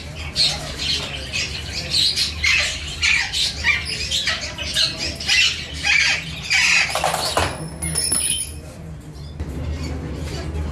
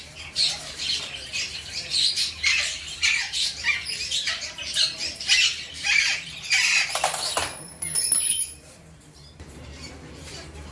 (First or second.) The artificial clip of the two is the second